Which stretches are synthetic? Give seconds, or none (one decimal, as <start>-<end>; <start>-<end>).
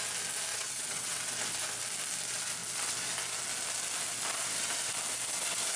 0.5-1.2